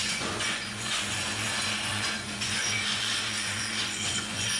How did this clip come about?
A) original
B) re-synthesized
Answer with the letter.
B